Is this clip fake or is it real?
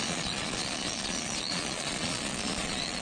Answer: fake